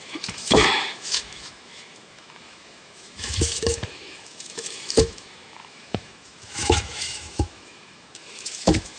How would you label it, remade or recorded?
remade